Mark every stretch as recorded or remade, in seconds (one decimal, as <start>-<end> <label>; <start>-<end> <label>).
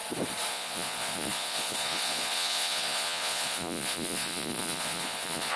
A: 0.0-0.5 recorded; 0.5-5.6 remade